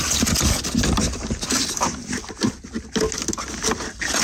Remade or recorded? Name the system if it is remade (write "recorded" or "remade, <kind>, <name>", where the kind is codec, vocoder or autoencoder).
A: recorded